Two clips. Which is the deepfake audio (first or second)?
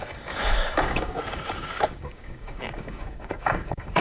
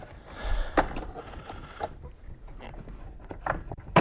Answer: first